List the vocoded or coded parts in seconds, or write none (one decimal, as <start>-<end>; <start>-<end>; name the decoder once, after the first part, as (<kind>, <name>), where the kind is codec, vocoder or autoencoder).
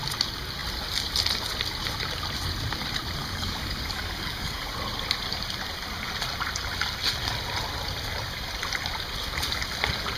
3.2-4.6 (codec, DAC)